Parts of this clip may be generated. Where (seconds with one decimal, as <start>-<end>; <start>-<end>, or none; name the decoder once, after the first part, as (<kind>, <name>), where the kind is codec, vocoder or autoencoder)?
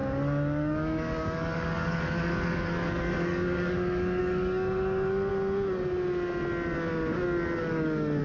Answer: 0.0-5.3 (codec, DAC); 7.6-8.2